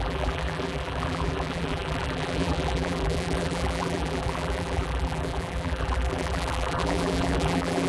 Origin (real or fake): fake